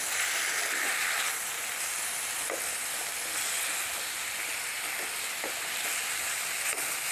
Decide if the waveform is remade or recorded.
recorded